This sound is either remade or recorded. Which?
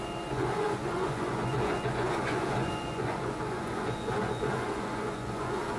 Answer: remade